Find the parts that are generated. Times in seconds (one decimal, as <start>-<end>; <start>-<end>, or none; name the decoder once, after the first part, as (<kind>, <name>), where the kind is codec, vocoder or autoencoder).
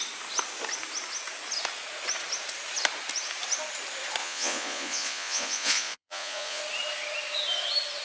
4.2-6.6 (vocoder, Vocos)